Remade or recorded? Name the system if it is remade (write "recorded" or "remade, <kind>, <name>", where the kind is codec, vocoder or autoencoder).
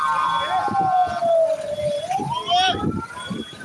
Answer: recorded